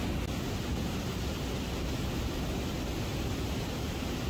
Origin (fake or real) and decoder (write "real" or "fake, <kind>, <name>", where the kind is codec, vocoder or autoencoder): real